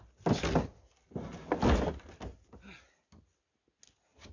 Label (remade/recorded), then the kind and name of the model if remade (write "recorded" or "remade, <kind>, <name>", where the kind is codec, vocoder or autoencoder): recorded